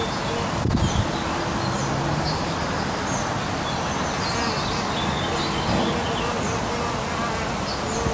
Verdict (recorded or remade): recorded